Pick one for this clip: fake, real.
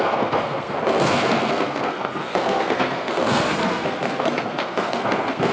fake